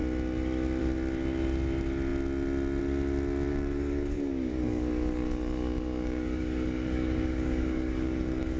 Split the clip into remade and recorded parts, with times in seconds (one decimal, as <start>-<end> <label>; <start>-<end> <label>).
0.0-3.5 recorded; 3.5-8.6 remade